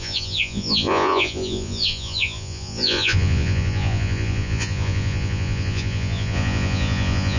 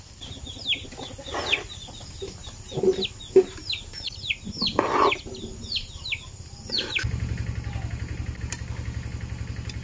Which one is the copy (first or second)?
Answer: first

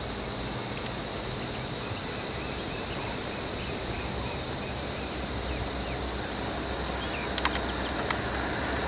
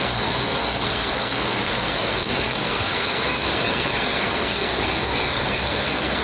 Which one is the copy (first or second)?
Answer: second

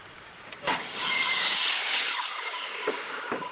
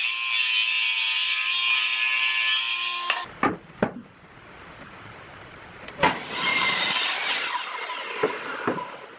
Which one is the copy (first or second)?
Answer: first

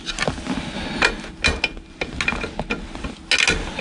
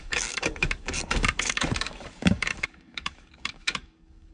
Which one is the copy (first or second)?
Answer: second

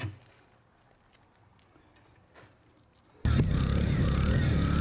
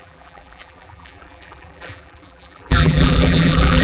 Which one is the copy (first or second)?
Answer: second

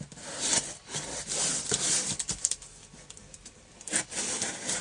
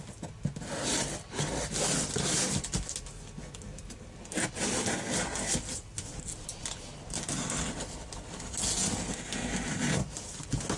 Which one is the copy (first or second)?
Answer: first